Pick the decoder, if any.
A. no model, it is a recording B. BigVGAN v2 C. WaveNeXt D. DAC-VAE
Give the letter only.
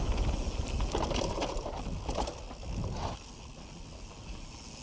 A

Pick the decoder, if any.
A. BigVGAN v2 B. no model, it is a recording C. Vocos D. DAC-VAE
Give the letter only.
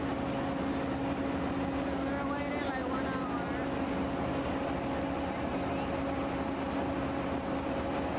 B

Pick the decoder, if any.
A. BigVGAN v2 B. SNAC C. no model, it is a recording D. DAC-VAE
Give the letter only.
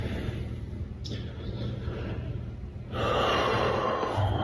A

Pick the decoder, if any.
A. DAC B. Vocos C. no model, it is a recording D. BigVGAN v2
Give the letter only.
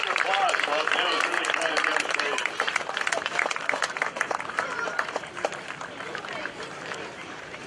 D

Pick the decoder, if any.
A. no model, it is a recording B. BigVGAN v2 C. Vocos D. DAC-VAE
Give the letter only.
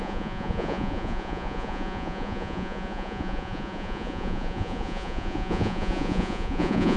C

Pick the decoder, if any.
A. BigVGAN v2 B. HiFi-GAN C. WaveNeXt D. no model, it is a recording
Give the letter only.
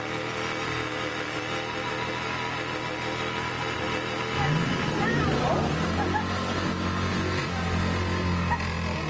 D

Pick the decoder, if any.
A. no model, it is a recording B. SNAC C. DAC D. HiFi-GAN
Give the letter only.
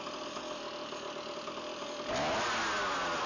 A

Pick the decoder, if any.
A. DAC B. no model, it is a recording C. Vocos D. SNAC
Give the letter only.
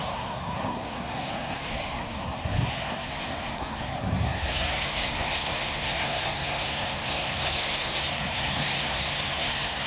D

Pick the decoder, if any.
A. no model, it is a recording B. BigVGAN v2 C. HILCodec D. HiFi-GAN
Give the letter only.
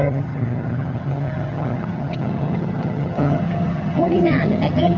D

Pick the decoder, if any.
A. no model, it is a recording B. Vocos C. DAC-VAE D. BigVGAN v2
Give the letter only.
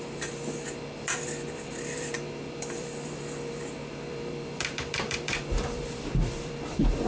D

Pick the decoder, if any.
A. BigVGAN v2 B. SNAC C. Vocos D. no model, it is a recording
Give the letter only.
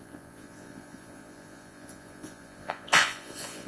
C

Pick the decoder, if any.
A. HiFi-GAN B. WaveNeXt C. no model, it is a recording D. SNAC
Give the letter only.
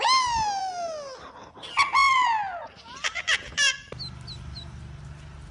C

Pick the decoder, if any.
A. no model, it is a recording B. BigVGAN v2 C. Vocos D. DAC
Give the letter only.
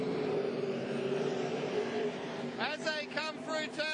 B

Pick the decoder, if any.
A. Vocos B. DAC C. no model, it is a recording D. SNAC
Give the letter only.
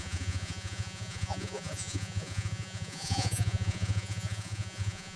A